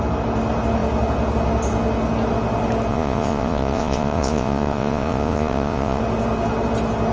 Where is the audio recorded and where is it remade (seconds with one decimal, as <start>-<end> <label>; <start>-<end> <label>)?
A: 0.0-2.9 recorded; 2.9-6.0 remade; 6.0-7.1 recorded